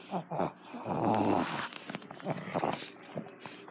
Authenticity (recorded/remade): recorded